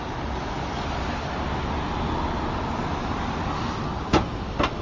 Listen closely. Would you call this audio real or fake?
real